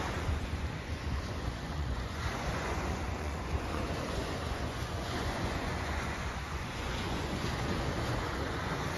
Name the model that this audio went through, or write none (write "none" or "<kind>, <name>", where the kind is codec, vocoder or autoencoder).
vocoder, Vocos